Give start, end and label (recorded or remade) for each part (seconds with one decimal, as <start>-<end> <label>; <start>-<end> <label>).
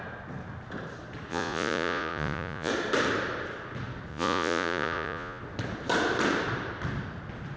0.0-1.3 recorded; 1.3-2.7 remade; 2.7-4.1 recorded; 4.1-5.4 remade; 5.4-7.6 recorded